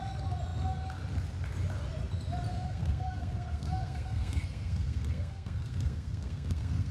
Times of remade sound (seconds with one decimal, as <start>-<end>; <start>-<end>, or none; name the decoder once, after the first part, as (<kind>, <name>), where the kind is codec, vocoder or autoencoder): 2.5-6.9 (codec, SNAC)